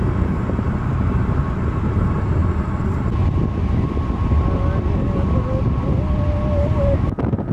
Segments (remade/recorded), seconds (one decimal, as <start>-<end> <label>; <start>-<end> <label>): 0.0-7.5 recorded